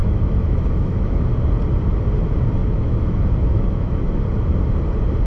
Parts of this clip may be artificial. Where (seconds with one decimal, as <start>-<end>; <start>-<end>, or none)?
0.0-1.2; 2.6-4.2